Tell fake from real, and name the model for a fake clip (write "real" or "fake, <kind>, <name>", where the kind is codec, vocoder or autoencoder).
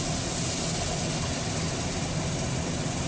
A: real